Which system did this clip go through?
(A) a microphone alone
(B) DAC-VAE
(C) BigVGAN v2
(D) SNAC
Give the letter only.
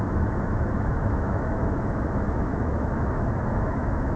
B